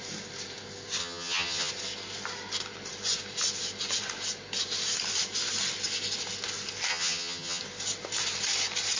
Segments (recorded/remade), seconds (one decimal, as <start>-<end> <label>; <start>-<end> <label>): 0.0-1.0 recorded; 1.0-1.7 remade; 1.7-6.9 recorded; 6.9-7.6 remade; 7.6-9.0 recorded